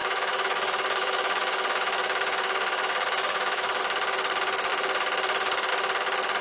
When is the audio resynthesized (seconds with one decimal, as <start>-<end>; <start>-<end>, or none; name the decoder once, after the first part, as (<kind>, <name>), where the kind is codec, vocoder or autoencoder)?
0.0-3.8 (autoencoder, DAC-VAE)